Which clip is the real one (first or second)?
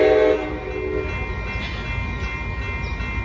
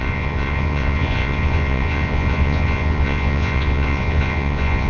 first